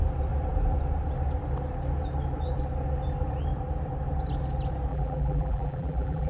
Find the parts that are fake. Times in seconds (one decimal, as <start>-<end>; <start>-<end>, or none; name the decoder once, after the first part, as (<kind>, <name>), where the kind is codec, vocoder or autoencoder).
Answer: 4.9-6.3 (vocoder, BigVGAN v2)